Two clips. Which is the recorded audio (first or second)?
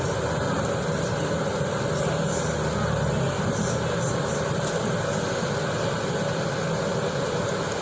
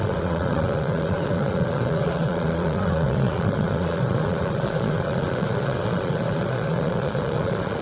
first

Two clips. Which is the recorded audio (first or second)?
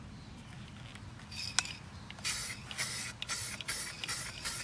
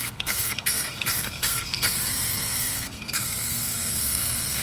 first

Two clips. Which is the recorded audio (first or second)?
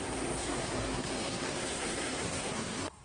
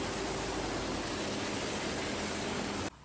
second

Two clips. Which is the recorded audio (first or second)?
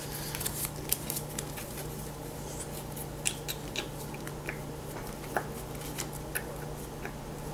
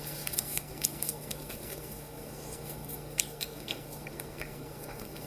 first